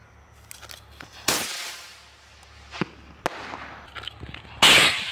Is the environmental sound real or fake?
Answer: real